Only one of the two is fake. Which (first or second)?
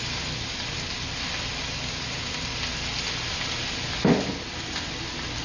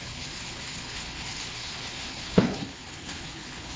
second